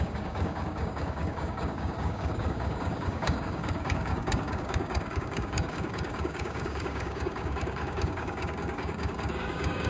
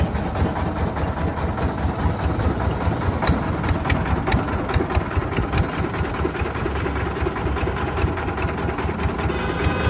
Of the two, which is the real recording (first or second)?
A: second